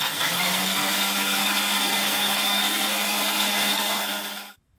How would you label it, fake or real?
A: fake